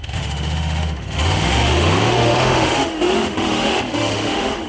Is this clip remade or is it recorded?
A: remade